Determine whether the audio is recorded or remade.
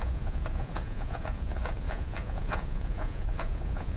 remade